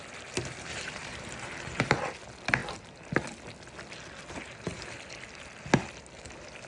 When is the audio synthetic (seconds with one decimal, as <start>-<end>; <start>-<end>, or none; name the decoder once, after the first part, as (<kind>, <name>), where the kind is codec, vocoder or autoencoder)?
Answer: 0.7-1.9 (vocoder, BigVGAN v2)